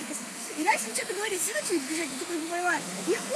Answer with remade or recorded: remade